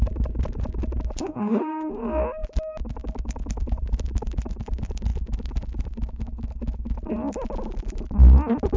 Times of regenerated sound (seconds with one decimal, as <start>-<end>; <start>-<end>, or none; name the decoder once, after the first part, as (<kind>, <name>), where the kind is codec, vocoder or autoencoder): 1.2-1.9 (autoencoder, DAC-VAE)